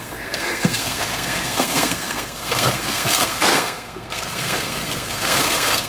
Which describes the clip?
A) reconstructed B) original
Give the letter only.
A